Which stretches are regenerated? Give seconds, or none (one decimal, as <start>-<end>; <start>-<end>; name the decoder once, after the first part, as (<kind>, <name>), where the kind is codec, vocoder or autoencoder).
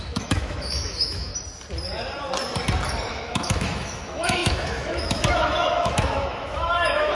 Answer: 0.0-1.3 (autoencoder, DAC-VAE); 3.1-7.1